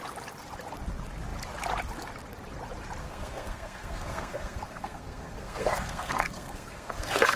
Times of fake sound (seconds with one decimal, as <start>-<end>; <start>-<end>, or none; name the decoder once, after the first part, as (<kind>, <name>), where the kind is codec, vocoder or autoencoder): 3.0-7.4 (codec, SNAC)